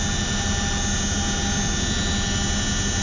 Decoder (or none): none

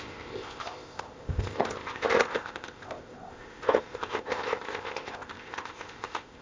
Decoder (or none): codec, ZipCodec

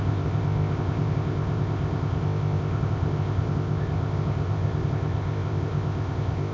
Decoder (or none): codec, ZipCodec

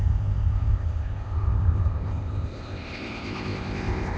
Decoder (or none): codec, ZipCodec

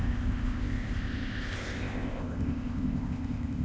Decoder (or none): codec, ZipCodec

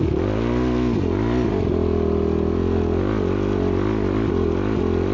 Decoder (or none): none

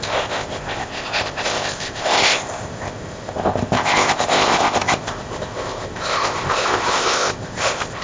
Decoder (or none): codec, ZipCodec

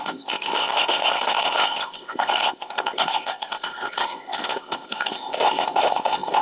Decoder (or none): codec, ZipCodec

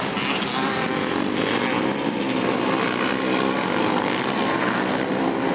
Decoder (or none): none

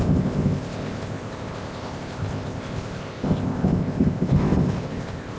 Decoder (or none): codec, ZipCodec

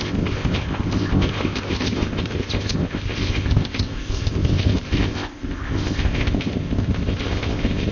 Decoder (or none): codec, ZipCodec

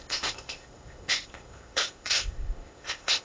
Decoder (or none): codec, ZipCodec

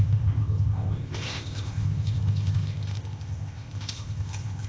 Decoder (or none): codec, ZipCodec